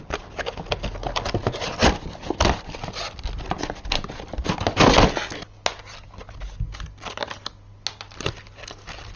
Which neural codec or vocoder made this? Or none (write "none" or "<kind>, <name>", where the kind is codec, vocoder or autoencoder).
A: none